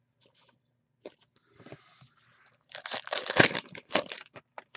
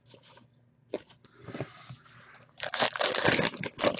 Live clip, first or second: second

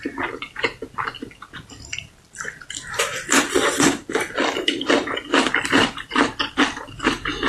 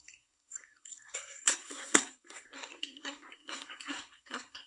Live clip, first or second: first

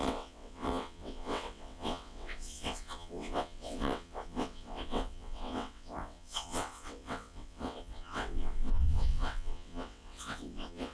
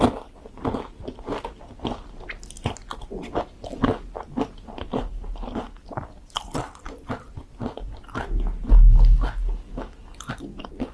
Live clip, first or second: second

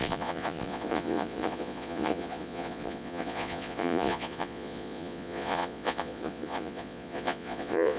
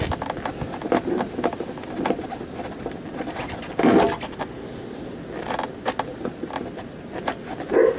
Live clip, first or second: second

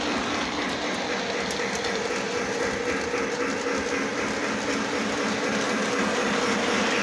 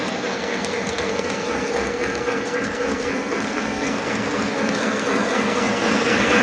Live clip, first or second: first